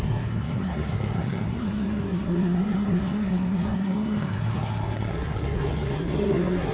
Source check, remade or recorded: remade